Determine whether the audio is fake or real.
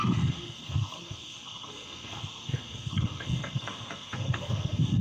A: fake